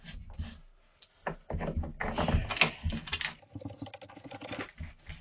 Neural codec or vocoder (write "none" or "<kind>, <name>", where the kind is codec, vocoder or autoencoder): none